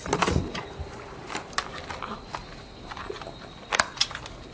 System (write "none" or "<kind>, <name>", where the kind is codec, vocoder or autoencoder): none